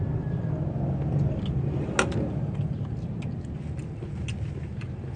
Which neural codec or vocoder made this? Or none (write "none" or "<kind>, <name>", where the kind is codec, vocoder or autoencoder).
none